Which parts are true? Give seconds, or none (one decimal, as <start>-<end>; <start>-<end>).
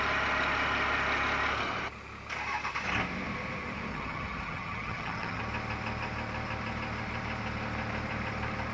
0.0-3.9; 5.4-8.7